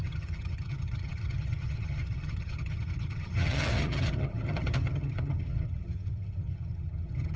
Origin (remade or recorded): remade